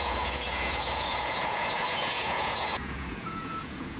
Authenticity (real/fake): fake